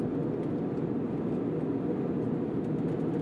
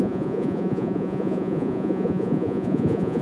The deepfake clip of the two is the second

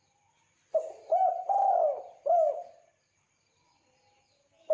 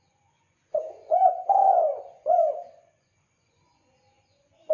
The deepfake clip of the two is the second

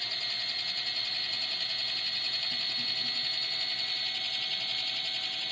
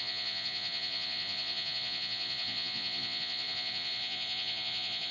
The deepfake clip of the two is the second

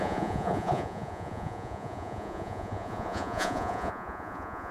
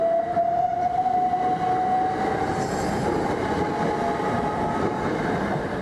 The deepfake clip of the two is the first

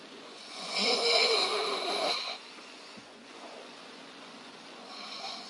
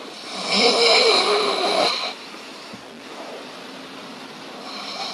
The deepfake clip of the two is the first